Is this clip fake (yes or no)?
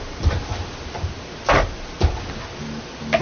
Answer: no